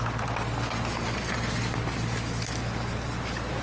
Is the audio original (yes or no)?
yes